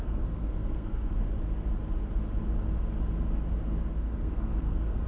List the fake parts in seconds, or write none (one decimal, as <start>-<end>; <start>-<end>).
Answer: 0.0-1.1; 3.9-5.1